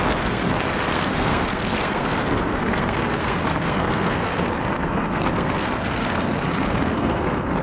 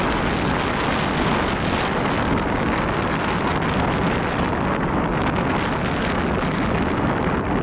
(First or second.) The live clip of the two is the second